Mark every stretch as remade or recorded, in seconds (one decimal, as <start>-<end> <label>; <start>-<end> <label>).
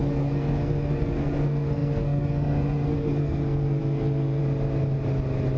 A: 0.0-4.4 remade; 4.4-5.6 recorded